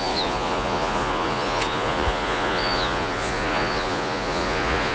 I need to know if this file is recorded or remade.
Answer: remade